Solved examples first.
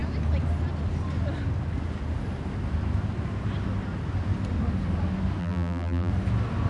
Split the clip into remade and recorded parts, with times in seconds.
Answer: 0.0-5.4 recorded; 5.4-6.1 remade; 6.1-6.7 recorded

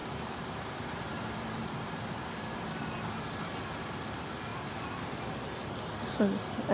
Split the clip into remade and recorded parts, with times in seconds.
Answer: 0.0-4.0 remade; 4.0-4.5 recorded; 4.5-5.2 remade; 5.2-6.7 recorded

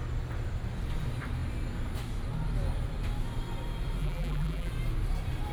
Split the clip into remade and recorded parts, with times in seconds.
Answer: 0.0-4.0 recorded; 4.0-4.7 remade; 4.7-5.5 recorded

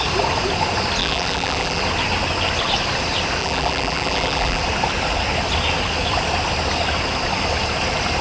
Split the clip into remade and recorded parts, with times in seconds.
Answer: 0.0-1.0 recorded; 1.0-1.8 remade; 1.8-3.4 recorded; 3.4-4.6 remade; 4.6-8.2 recorded

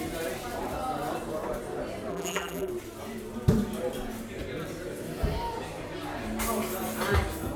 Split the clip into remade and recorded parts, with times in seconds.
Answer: 0.0-2.1 recorded; 2.1-2.7 remade; 2.7-7.6 recorded

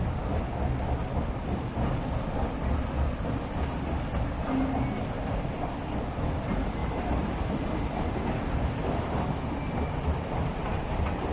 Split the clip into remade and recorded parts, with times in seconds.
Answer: 0.0-6.8 recorded; 6.8-7.4 remade; 7.4-11.3 recorded

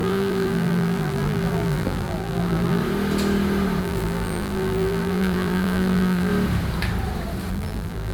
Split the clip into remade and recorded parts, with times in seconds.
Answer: 0.0-2.8 remade; 2.8-3.8 recorded; 3.8-6.3 remade; 6.3-7.5 recorded; 7.5-8.1 remade